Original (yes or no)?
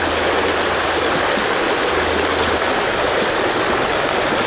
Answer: yes